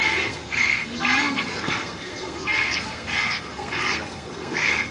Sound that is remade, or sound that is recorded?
remade